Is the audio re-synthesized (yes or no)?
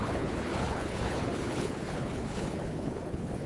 yes